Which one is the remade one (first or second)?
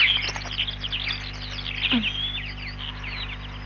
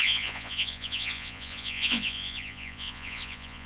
second